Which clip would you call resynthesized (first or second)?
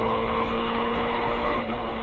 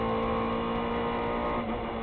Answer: first